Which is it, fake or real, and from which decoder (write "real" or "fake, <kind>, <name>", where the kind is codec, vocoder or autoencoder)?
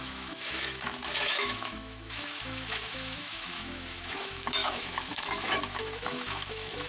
fake, autoencoder, DAC-VAE